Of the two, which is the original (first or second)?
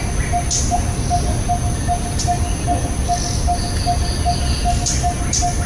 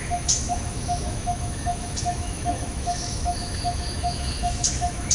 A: first